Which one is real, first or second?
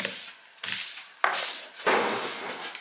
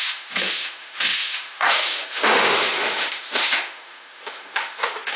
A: first